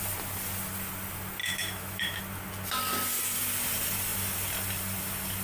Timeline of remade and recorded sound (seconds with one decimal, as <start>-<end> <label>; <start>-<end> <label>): 0.0-1.4 recorded; 1.4-2.2 remade; 2.2-5.4 recorded

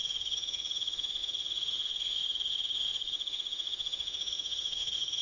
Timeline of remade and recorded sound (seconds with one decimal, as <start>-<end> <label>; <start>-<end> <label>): 0.0-5.2 remade